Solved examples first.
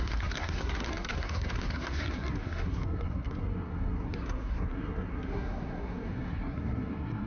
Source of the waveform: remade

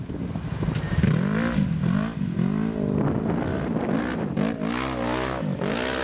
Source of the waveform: recorded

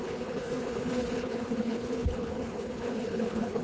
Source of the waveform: remade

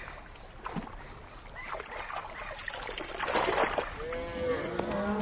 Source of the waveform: recorded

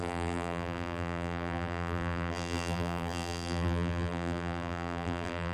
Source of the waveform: remade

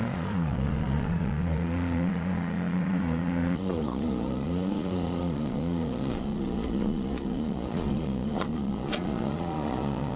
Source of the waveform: remade